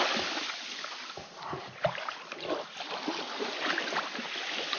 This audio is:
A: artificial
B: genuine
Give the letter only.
B